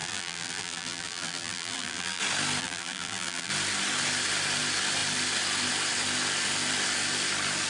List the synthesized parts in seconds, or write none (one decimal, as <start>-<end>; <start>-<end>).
0.0-2.2; 2.6-3.5